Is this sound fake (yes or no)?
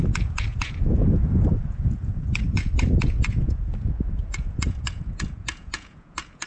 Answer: yes